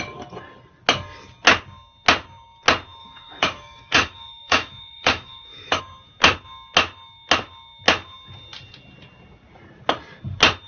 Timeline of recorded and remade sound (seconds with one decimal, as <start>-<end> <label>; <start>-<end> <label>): 0.0-3.0 recorded; 3.0-5.8 remade; 5.8-10.7 recorded